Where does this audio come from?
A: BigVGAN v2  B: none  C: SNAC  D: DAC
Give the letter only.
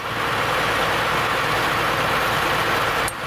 B